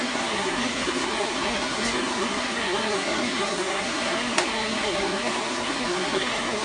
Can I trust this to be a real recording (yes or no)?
no